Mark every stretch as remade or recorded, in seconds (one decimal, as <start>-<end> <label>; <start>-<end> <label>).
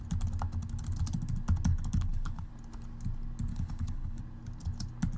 0.0-1.7 recorded; 1.7-2.5 remade; 2.5-3.5 recorded; 3.5-4.2 remade; 4.2-5.2 recorded